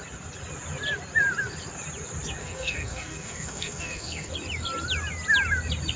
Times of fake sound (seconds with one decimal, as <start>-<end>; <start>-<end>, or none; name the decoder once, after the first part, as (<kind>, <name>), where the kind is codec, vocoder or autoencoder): 2.4-4.3 (codec, SNAC)